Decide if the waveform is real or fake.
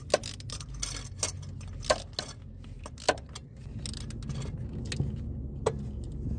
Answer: real